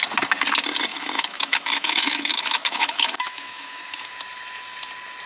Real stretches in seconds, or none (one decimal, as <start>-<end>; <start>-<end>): 0.0-0.9; 4.1-5.3